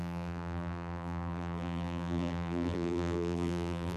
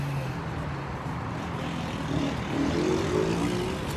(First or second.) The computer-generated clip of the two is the first